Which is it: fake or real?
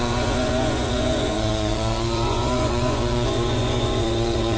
fake